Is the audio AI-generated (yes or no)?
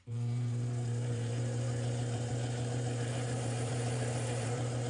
yes